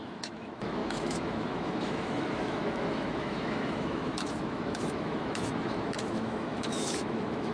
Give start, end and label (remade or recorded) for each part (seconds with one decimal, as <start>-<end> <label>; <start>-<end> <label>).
0.0-7.5 remade